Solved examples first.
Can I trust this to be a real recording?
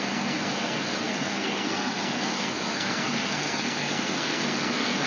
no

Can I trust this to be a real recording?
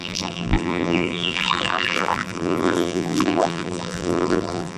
no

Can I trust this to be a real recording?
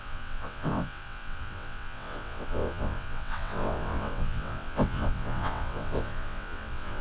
no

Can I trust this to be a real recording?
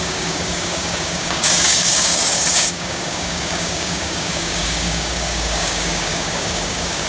no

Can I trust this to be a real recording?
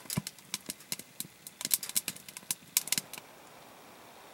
yes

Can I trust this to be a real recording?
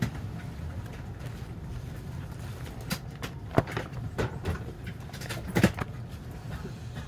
no